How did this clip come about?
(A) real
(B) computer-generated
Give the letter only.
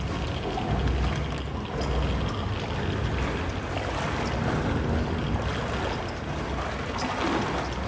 A